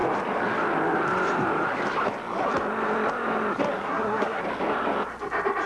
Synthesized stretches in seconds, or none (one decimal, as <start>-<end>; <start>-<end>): 3.8-4.4